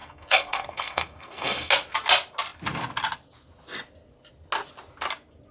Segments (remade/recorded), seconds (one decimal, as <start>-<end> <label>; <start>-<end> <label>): 0.0-1.7 remade; 1.7-5.5 recorded